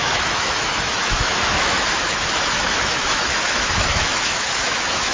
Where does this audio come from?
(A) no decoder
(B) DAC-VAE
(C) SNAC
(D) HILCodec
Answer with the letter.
B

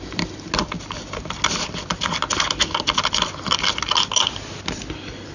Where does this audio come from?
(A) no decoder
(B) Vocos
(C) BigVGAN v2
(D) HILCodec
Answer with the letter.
A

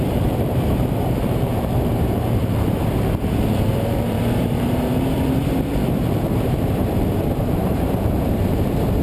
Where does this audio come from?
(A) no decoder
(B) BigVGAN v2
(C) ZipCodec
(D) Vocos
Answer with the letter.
B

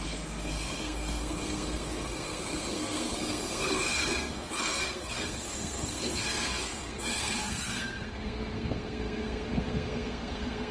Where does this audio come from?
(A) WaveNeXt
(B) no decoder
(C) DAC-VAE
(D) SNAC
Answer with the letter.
D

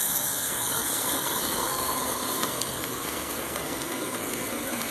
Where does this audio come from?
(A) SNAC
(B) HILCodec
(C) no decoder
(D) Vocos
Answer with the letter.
A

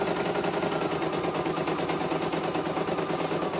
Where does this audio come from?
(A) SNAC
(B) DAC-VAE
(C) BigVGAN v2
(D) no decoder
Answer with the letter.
D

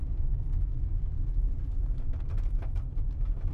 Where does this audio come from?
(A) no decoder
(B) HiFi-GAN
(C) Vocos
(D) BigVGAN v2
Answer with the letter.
D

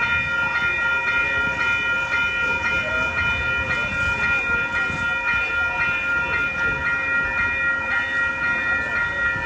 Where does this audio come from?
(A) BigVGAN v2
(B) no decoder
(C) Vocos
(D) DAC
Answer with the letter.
B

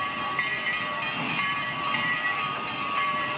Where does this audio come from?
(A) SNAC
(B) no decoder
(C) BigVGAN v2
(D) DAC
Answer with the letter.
C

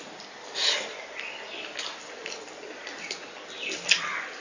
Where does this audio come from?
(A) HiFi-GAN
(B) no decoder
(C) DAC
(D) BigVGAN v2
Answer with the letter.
B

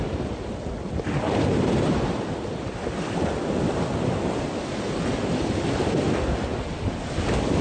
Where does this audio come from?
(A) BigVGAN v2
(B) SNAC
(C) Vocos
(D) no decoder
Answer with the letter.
D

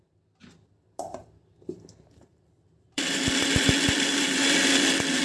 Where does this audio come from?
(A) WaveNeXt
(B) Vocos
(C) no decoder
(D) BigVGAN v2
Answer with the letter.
D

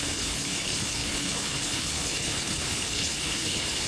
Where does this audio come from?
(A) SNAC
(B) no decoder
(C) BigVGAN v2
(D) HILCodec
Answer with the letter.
D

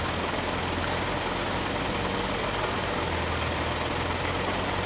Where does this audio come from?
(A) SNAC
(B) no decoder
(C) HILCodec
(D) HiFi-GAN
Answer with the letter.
B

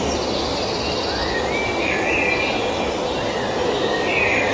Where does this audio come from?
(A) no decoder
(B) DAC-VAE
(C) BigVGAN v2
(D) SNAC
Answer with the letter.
A